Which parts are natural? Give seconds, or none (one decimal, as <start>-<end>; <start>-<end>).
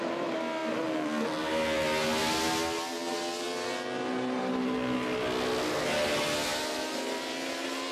0.0-7.9